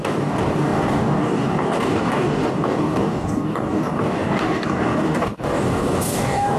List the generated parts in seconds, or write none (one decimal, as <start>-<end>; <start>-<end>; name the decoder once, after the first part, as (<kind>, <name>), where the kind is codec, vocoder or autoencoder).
0.0-6.6 (codec, DAC)

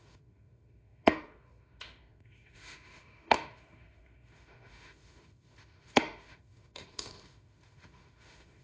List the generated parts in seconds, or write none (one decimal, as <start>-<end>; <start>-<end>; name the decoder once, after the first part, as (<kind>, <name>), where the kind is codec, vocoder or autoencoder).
0.0-8.6 (autoencoder, DAC-VAE)

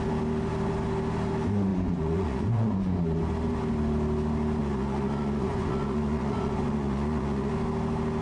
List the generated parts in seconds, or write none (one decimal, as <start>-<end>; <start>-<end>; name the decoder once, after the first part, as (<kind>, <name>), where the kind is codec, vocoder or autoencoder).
1.7-3.2 (vocoder, Vocos); 4.6-7.5

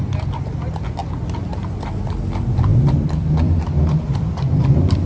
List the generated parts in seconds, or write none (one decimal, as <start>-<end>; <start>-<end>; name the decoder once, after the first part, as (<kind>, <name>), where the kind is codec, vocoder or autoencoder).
2.7-4.3 (vocoder, BigVGAN v2)

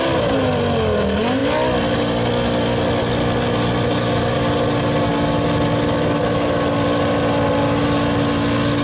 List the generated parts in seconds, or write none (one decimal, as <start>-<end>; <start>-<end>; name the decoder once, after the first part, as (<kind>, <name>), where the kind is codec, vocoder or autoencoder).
none

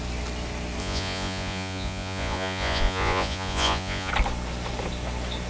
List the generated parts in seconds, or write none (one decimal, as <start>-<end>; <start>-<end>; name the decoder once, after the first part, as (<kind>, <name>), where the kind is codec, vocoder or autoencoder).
0.8-4.1 (vocoder, Vocos)

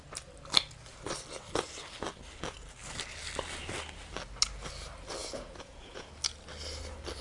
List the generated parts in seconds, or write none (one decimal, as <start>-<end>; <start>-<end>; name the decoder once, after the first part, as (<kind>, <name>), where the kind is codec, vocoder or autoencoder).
5.2-6.1 (vocoder, Vocos)